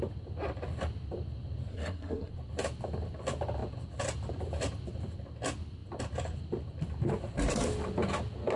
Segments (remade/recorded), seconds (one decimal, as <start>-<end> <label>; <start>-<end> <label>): 0.0-1.7 recorded; 1.7-2.3 remade; 2.3-8.6 recorded